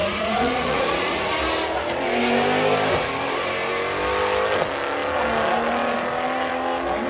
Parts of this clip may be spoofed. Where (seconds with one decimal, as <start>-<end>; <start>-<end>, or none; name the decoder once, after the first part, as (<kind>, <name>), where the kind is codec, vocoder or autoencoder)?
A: 0.0-1.3 (vocoder, Vocos)